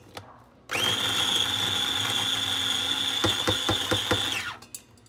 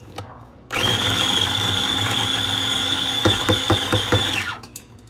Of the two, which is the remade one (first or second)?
second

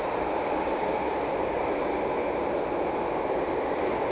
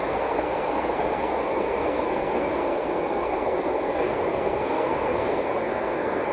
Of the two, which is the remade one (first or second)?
second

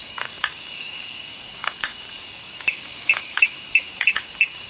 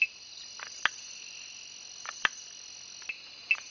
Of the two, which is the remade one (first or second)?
first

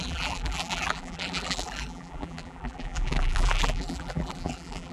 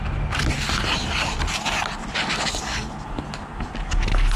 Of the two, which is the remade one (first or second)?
first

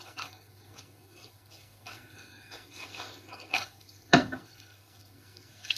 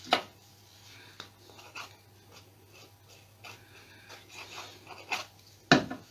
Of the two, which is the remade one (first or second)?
first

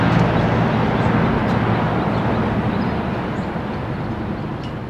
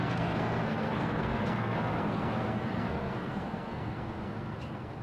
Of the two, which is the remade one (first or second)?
second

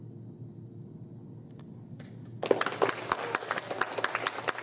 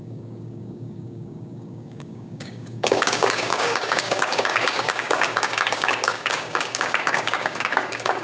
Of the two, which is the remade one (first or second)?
second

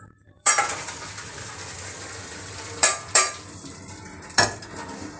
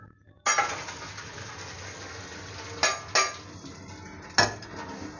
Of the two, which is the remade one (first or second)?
first